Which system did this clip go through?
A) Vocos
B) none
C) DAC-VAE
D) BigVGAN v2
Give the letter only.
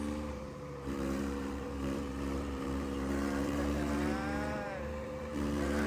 D